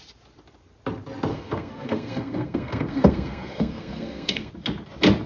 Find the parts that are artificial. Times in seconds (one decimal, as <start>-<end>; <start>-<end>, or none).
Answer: 1.3-4.5